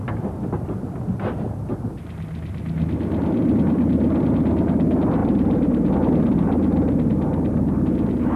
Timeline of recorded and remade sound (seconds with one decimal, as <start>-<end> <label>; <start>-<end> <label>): 0.0-5.2 recorded; 5.2-5.9 remade; 5.9-8.4 recorded